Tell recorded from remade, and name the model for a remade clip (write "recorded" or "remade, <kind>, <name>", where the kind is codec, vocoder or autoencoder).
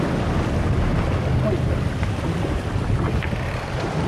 recorded